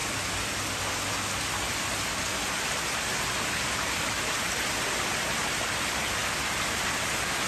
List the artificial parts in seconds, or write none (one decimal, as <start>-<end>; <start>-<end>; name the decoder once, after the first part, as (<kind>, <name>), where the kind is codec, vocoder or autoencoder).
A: 3.1-4.0 (vocoder, BigVGAN v2)